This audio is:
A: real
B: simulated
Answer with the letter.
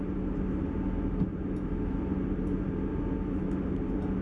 A